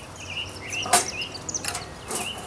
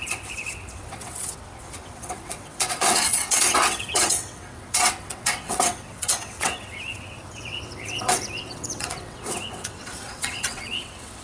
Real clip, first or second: first